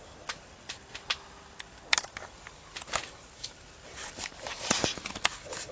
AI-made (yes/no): no